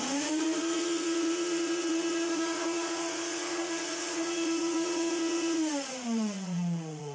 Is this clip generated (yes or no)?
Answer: yes